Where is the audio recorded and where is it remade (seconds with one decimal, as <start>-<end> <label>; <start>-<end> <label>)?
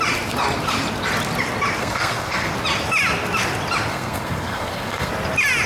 0.0-1.8 recorded; 1.8-2.5 remade; 2.5-3.9 recorded; 3.9-5.1 remade; 5.1-5.7 recorded